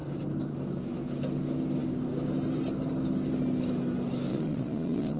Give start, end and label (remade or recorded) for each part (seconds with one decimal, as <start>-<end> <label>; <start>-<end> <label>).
0.0-4.3 recorded; 4.3-5.2 remade